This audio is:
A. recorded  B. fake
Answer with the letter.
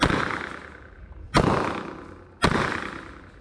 B